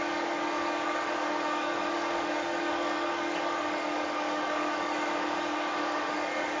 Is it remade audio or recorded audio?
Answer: remade